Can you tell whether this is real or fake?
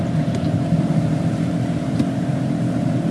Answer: fake